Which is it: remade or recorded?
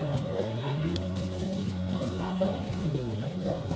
remade